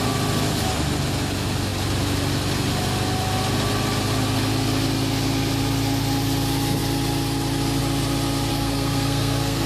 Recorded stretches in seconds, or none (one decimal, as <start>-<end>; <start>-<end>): 0.0-8.5